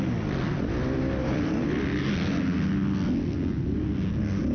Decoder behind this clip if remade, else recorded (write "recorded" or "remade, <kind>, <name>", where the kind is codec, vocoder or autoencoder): recorded